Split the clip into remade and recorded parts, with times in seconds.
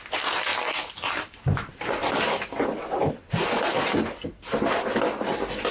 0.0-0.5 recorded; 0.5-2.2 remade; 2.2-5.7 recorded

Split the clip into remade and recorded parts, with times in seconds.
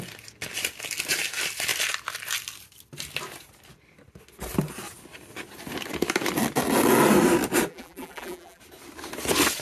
0.0-7.7 recorded; 7.7-8.6 remade; 8.6-9.6 recorded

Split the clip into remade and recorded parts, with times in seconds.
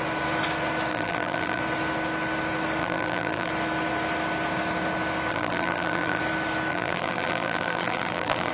0.0-0.9 recorded; 0.9-1.6 remade; 1.6-2.8 recorded; 2.8-3.5 remade; 3.5-5.3 recorded; 5.3-6.2 remade; 6.2-6.7 recorded; 6.7-8.5 remade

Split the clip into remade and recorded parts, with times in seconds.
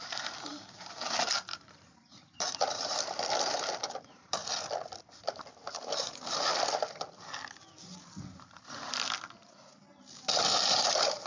0.0-4.4 remade; 4.4-5.9 recorded; 5.9-6.5 remade; 6.5-10.3 recorded; 10.3-11.3 remade